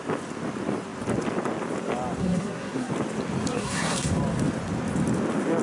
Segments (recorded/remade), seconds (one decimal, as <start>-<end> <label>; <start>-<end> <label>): 0.0-2.2 recorded; 2.2-2.9 remade; 2.9-3.5 recorded; 3.5-4.1 remade; 4.1-5.6 recorded